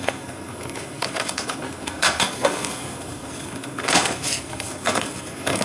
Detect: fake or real fake